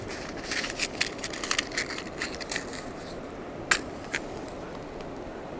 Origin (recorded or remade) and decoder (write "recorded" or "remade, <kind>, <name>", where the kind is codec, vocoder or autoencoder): recorded